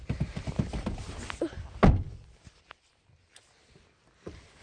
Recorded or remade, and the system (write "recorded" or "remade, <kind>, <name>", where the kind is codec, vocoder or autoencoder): recorded